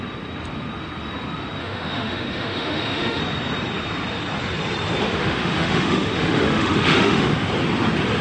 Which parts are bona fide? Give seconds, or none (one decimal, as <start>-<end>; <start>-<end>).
0.0-1.6; 3.2-5.0; 7.5-8.2